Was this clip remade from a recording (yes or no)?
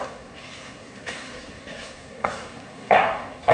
yes